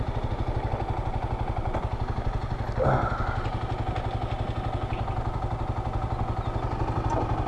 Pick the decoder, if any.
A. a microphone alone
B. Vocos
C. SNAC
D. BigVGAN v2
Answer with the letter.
A